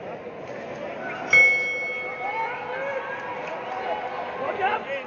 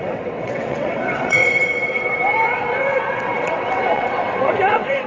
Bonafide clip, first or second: first